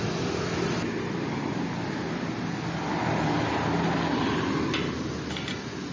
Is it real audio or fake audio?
real